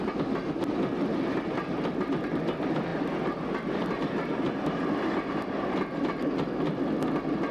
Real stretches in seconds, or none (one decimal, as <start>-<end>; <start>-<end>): 0.0-7.5